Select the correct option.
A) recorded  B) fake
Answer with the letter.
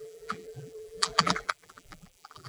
B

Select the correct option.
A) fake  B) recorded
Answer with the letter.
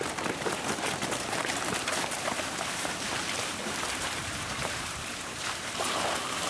A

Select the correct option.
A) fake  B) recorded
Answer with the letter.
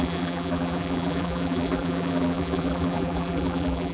A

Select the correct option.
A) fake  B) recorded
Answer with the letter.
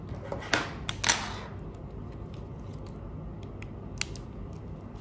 B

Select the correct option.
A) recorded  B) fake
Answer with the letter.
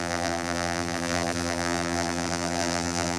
B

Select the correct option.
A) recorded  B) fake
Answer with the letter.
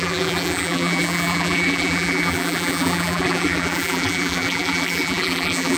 B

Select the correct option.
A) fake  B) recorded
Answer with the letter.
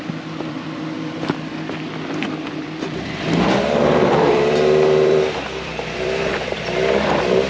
A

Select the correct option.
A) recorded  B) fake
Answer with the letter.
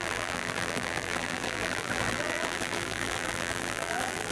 B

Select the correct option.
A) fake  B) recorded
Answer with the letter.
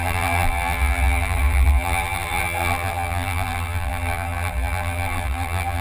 A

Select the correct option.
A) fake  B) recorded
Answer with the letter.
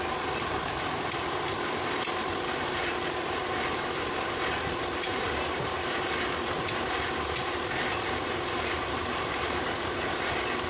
A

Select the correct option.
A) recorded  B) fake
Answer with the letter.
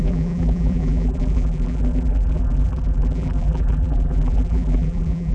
B